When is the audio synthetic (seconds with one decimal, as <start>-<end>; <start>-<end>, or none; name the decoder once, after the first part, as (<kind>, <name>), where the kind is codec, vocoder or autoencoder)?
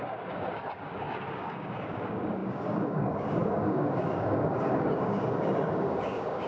0.0-6.5 (codec, DAC)